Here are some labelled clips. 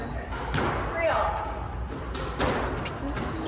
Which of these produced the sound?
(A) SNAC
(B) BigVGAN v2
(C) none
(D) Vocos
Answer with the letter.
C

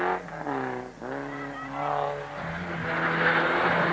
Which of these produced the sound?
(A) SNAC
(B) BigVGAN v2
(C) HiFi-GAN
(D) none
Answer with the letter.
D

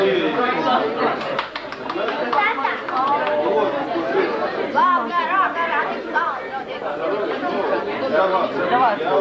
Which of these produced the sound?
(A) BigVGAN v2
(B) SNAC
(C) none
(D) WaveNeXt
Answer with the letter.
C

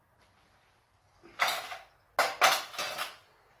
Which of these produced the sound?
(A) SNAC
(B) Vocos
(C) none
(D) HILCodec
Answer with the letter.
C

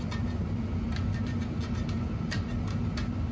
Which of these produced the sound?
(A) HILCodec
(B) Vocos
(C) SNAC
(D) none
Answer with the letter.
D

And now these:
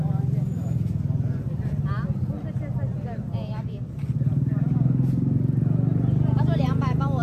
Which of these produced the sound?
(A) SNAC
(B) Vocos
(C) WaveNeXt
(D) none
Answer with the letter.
D